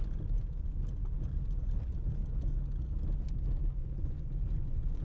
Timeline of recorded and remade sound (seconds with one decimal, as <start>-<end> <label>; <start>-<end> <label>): 0.0-3.8 recorded; 3.8-5.0 remade